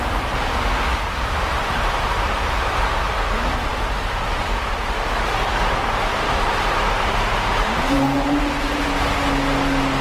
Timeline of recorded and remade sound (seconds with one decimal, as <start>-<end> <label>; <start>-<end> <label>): 0.0-1.6 recorded; 1.6-2.3 remade; 2.3-6.1 recorded; 6.1-8.8 remade; 8.8-10.0 recorded